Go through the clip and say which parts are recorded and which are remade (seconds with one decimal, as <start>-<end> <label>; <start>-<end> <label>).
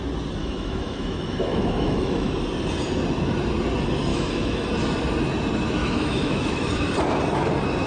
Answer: 0.0-0.4 recorded; 0.4-2.4 remade; 2.4-4.1 recorded; 4.1-4.7 remade; 4.7-5.8 recorded; 5.8-6.7 remade; 6.7-7.9 recorded